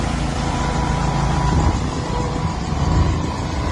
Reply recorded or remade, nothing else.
remade